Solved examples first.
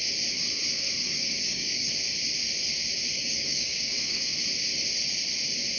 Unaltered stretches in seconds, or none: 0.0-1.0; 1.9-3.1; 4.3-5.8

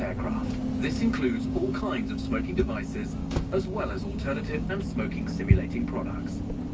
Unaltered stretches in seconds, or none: 0.0-1.0; 2.7-3.2; 4.7-6.7

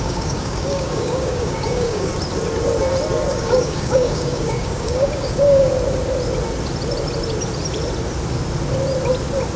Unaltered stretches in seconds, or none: 2.1-3.3; 5.7-9.6

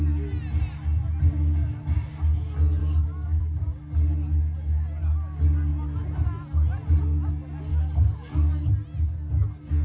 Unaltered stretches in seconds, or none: 0.0-2.8; 3.4-7.7; 8.7-9.8